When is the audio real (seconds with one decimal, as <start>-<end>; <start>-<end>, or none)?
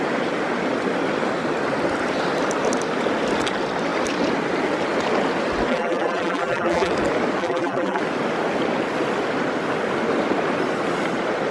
0.0-5.7; 6.9-7.4; 8.0-11.5